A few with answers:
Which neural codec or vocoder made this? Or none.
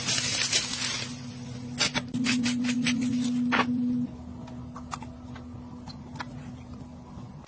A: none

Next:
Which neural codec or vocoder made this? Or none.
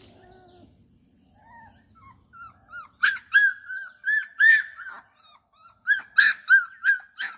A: none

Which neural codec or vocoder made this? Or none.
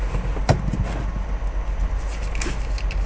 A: none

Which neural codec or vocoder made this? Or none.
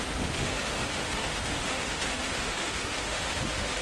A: autoencoder, DAC-VAE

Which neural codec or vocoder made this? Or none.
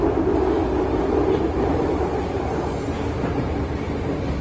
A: none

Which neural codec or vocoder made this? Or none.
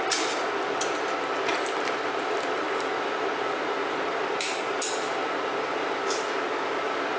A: none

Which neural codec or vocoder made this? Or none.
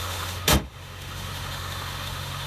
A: autoencoder, DAC-VAE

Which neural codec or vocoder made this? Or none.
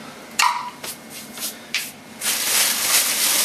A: none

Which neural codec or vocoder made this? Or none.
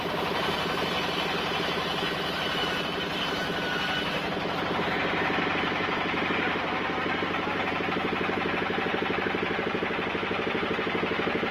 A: none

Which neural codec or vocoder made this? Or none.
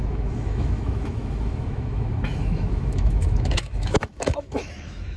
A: autoencoder, DAC-VAE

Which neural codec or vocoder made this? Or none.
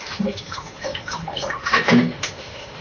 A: autoencoder, DAC-VAE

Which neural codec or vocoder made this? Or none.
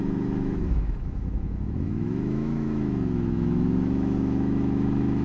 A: autoencoder, DAC-VAE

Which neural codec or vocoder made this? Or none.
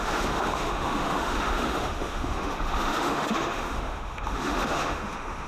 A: autoencoder, DAC-VAE